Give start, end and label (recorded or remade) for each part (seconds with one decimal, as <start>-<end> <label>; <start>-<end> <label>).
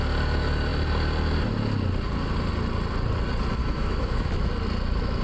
0.0-3.6 recorded; 3.6-4.3 remade; 4.3-5.2 recorded